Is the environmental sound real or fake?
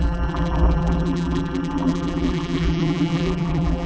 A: fake